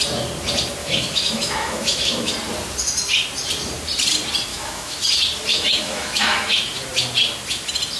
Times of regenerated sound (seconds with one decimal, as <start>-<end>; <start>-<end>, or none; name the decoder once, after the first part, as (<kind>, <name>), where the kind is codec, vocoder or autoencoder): 0.8-2.3 (autoencoder, DAC-VAE); 4.5-5.0; 5.5-6.5